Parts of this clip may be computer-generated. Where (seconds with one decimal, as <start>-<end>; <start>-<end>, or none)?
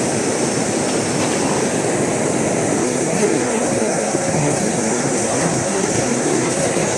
2.8-7.0